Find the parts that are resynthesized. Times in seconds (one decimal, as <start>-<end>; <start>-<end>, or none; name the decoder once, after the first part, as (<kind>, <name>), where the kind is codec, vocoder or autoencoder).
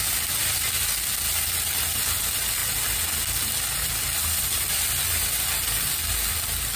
none